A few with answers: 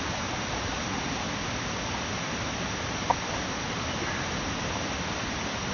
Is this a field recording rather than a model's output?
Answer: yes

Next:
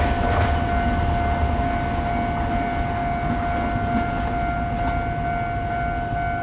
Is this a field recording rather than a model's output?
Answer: yes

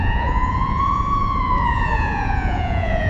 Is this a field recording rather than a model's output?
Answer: no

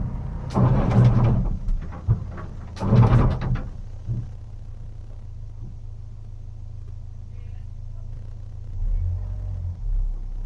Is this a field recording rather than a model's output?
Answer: yes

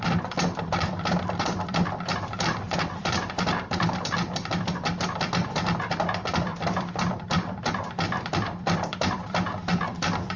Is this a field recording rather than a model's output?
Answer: no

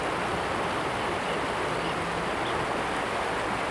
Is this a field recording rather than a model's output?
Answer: yes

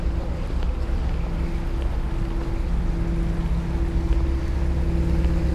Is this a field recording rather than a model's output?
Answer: yes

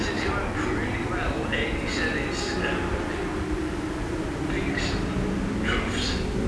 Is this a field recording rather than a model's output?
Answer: yes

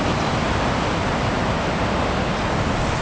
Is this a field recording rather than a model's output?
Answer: yes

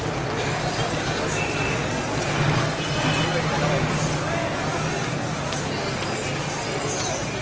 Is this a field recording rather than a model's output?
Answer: yes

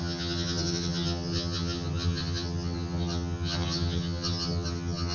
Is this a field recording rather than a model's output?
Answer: no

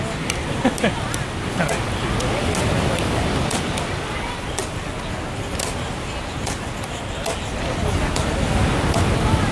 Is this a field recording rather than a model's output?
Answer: yes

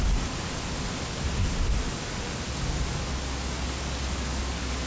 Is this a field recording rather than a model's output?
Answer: yes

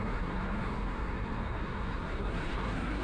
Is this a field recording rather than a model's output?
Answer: no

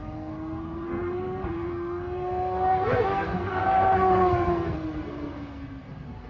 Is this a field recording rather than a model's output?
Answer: no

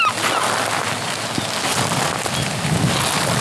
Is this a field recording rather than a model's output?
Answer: yes